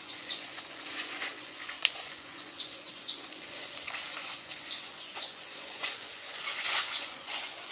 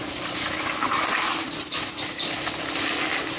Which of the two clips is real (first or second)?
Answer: second